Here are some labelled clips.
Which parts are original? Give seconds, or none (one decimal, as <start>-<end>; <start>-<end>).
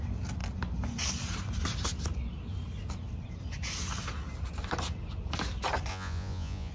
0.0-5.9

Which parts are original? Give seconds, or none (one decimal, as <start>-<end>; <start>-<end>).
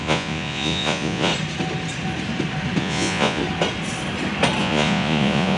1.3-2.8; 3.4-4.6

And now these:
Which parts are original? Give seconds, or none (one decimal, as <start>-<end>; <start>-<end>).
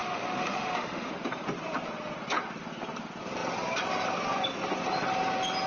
1.1-5.7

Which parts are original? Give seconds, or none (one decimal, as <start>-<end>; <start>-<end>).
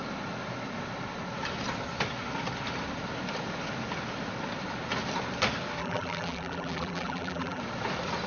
0.0-5.8; 7.6-8.3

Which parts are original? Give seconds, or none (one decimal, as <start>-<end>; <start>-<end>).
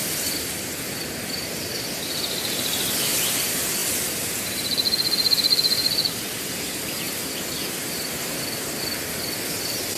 3.8-4.5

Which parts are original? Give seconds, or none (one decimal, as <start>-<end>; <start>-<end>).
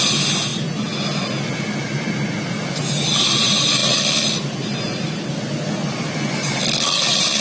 0.0-7.4